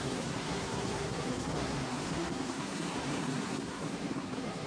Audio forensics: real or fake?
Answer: fake